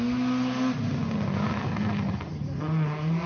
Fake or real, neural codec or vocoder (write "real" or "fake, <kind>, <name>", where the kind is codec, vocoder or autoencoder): real